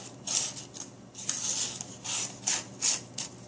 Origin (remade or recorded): recorded